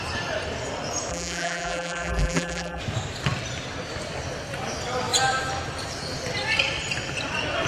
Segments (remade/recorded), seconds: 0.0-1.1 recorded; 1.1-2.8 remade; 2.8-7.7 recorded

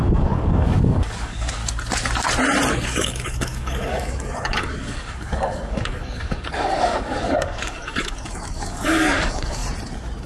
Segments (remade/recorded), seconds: 0.0-1.6 remade; 1.6-2.7 recorded; 2.7-9.6 remade; 9.6-10.3 recorded

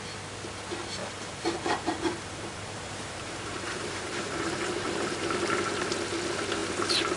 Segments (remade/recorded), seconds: 0.0-1.0 recorded; 1.0-5.2 remade; 5.2-7.2 recorded

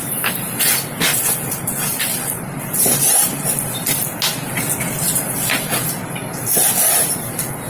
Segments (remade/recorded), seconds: 0.0-0.7 remade; 0.7-1.1 recorded; 1.1-3.5 remade; 3.5-5.0 recorded; 5.0-5.9 remade; 5.9-7.7 recorded

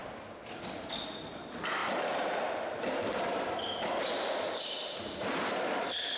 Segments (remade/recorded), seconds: 0.0-1.8 recorded; 1.8-5.5 remade; 5.5-6.2 recorded

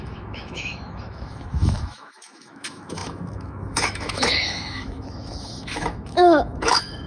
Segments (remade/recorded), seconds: 0.0-7.1 remade

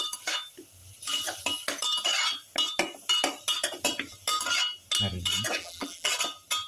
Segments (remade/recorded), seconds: 0.0-5.6 recorded; 5.6-6.1 remade; 6.1-6.7 recorded